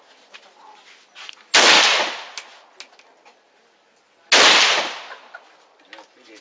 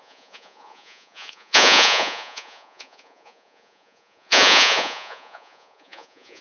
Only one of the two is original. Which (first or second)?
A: first